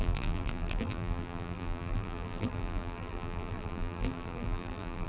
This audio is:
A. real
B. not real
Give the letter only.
B